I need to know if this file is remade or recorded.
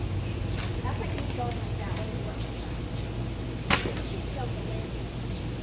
recorded